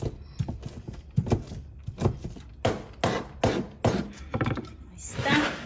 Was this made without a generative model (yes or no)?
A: yes